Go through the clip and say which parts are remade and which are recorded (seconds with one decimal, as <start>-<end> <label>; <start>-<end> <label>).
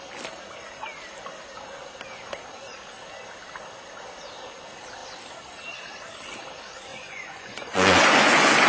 0.0-6.9 recorded; 6.9-8.7 remade